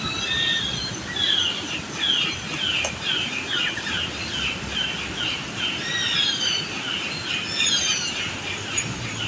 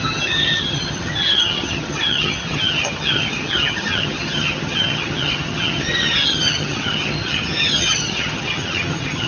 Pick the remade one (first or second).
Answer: second